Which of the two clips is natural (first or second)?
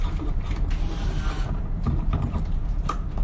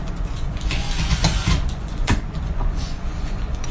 first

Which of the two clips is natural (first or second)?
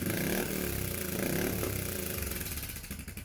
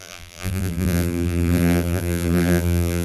first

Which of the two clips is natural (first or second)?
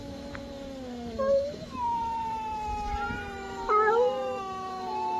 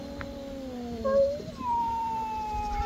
second